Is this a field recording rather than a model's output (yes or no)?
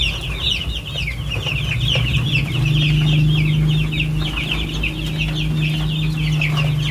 yes